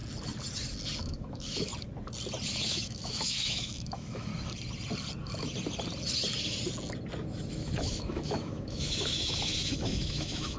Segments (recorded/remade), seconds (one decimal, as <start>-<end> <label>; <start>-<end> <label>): 0.0-1.0 recorded; 1.0-1.7 remade; 1.7-2.5 recorded; 2.5-4.3 remade; 4.3-7.5 recorded; 7.5-10.6 remade

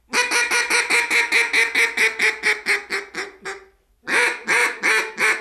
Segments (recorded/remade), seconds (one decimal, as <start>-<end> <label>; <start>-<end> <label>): 0.0-5.4 recorded

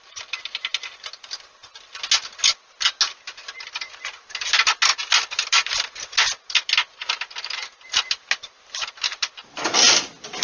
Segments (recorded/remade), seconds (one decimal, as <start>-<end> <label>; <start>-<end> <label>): 0.0-10.4 recorded

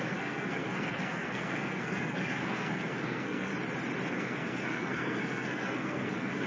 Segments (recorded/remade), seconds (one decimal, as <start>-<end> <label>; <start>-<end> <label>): 0.0-3.5 remade; 3.5-4.1 recorded; 4.1-6.5 remade

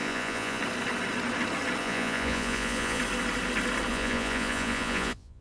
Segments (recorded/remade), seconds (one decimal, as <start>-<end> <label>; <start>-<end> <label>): 0.0-0.6 remade; 0.6-1.8 recorded; 1.8-3.0 remade; 3.0-3.9 recorded; 3.9-5.4 remade